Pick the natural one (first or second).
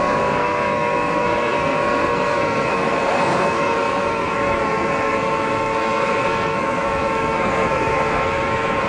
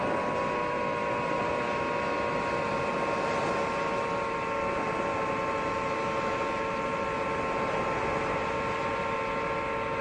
second